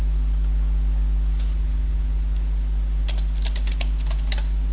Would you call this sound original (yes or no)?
yes